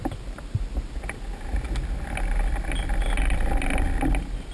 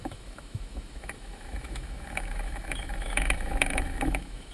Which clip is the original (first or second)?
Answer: first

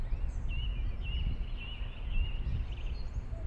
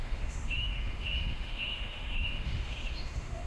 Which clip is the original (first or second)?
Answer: first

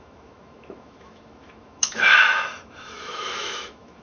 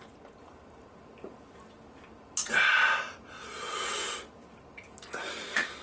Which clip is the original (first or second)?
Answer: second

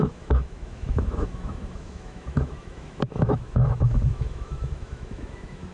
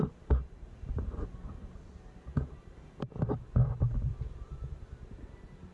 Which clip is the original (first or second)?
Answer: second